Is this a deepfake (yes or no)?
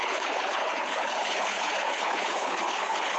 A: yes